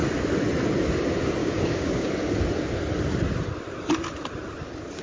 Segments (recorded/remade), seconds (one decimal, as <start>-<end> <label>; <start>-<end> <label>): 0.0-1.4 recorded; 1.4-2.1 remade; 2.1-5.0 recorded